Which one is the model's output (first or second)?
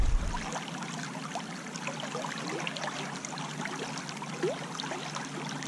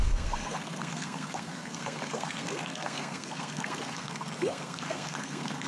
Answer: second